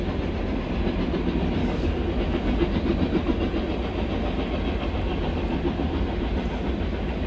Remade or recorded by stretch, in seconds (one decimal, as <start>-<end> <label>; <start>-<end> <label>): 0.0-1.6 recorded; 1.6-2.1 remade; 2.1-7.3 recorded